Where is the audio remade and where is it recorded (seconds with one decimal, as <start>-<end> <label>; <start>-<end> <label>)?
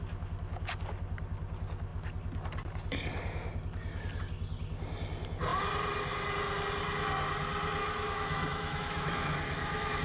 0.0-7.8 recorded; 7.8-10.0 remade